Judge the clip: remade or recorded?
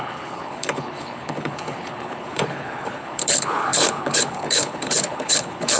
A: remade